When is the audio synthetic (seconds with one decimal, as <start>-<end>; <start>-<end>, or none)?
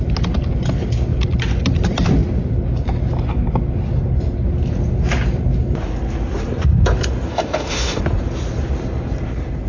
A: 7.3-8.0